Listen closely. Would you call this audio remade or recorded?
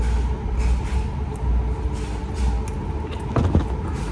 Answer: recorded